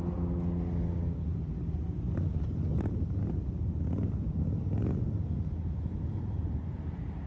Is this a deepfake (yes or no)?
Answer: no